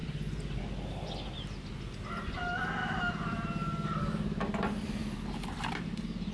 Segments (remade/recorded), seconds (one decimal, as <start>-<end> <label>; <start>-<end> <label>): 0.0-2.8 recorded; 2.8-6.3 remade